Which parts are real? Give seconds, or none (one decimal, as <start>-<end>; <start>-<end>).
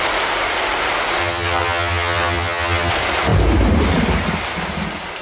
0.0-1.2; 2.9-5.2